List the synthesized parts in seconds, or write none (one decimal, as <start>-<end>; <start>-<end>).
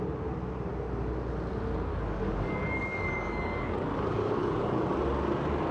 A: 1.9-4.9